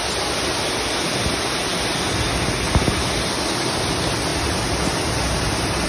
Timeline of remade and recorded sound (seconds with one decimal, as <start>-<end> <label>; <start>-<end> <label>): 0.0-5.9 recorded